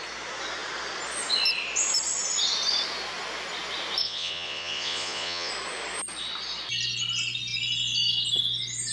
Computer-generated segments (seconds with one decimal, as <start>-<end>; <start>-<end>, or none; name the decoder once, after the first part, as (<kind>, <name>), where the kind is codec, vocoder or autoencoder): 4.0-5.5 (vocoder, Vocos)